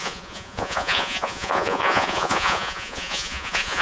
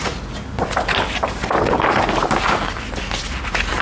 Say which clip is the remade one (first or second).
first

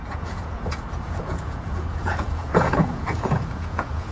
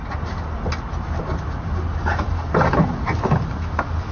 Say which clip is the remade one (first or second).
first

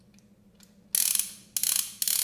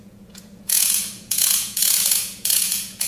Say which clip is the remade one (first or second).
second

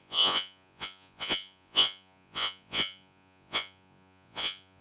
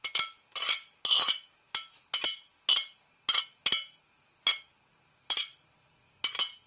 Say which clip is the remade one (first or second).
first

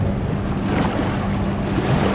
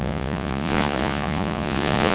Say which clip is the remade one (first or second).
second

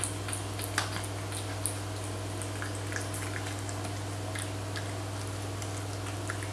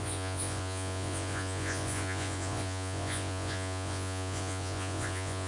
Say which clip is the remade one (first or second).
second